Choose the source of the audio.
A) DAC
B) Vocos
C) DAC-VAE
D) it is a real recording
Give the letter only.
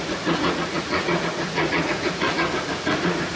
B